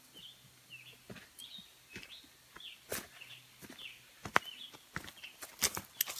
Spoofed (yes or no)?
no